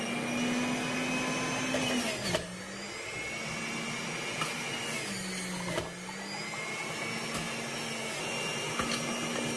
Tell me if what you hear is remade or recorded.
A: recorded